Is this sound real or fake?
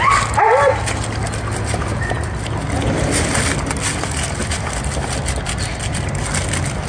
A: real